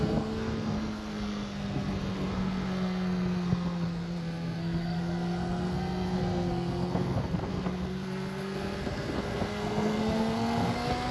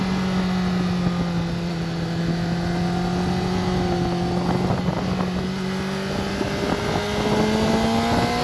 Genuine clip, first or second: second